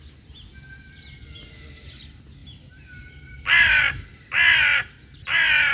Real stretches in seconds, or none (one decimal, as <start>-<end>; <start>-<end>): 0.0-2.4; 3.8-5.7